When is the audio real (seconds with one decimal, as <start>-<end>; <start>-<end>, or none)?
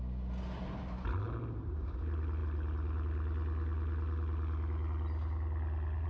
0.0-6.1